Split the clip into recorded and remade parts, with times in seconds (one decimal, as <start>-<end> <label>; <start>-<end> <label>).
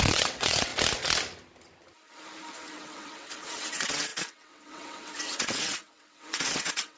0.0-0.7 remade; 0.7-2.5 recorded; 2.5-7.0 remade